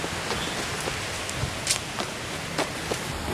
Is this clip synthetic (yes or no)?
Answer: no